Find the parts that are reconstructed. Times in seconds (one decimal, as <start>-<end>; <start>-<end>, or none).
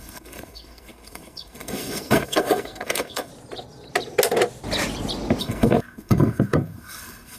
0.0-3.3; 5.4-7.4